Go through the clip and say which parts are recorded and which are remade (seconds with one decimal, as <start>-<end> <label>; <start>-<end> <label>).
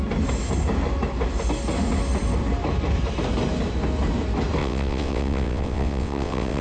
0.0-4.6 recorded; 4.6-6.6 remade